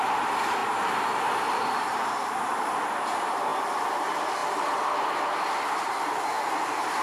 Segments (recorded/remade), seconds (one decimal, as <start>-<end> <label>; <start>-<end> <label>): 0.0-0.6 recorded; 0.6-2.7 remade; 2.7-7.0 recorded

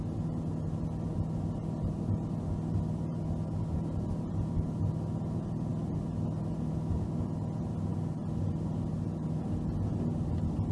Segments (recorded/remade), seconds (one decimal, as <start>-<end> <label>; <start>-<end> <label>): 0.0-10.7 recorded

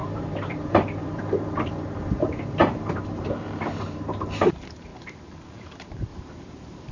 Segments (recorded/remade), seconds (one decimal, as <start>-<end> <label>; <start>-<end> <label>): 0.0-4.9 remade; 4.9-5.6 recorded; 5.6-6.9 remade